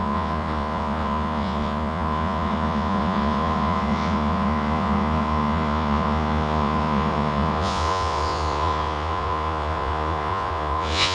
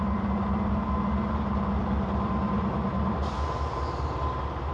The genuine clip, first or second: second